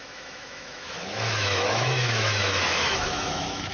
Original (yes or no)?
no